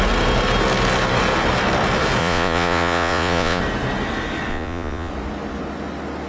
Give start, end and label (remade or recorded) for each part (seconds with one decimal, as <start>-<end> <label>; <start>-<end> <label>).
0.0-2.2 recorded; 2.2-3.6 remade; 3.6-4.5 recorded; 4.5-5.1 remade; 5.1-6.3 recorded